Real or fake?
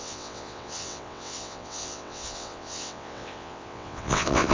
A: fake